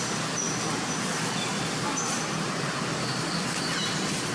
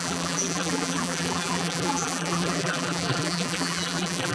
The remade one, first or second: second